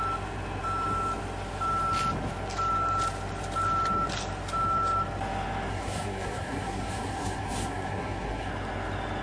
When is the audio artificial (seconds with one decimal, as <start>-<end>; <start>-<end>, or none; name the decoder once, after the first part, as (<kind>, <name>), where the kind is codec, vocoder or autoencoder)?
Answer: 5.7-8.5 (codec, SNAC)